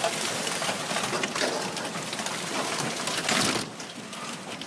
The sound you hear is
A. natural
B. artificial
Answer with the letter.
A